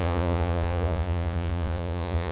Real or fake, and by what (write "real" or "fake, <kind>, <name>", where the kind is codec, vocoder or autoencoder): fake, vocoder, Vocos